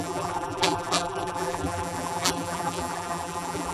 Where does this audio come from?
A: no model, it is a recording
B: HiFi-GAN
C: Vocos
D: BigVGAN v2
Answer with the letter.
D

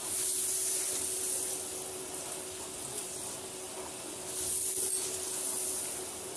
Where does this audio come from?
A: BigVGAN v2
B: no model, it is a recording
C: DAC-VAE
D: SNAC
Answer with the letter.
B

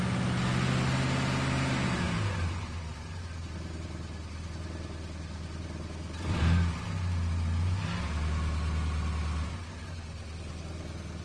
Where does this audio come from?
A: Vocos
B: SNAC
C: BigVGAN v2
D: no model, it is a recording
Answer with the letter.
D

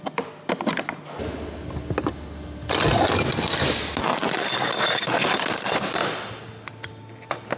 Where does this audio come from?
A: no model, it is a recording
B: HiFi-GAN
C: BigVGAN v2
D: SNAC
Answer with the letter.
A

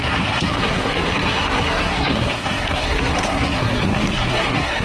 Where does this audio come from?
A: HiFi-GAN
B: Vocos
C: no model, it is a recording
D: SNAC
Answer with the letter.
D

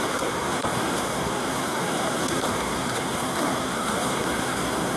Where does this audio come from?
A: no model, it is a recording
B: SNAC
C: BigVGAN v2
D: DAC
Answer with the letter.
B